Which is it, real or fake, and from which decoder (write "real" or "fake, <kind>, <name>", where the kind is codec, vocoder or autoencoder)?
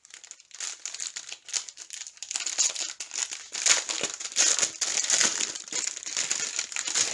real